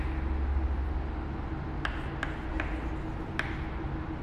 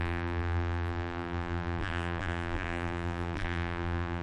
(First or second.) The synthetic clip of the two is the second